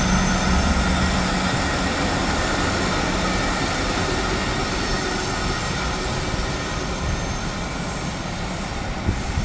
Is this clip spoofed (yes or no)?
no